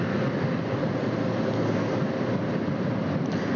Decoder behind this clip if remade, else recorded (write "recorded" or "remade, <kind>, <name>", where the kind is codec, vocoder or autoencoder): recorded